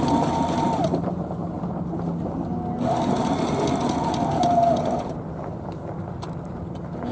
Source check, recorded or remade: recorded